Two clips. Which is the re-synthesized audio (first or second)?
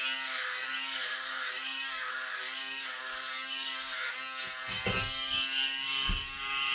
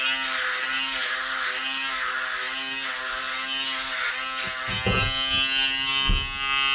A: first